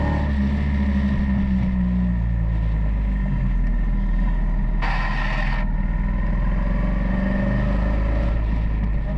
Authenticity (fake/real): real